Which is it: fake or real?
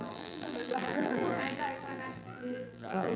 fake